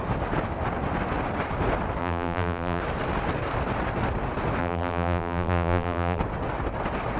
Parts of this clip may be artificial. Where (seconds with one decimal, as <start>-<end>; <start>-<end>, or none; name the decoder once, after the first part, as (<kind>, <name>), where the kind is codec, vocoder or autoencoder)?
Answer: 2.0-2.8 (vocoder, BigVGAN v2); 4.6-6.2